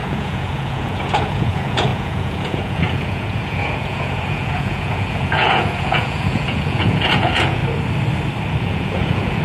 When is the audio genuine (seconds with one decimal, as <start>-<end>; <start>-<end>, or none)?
7.6-8.6